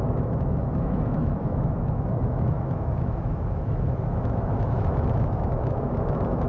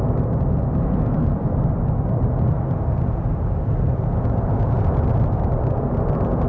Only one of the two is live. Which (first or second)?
second